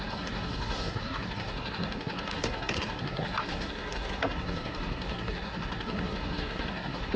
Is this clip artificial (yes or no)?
yes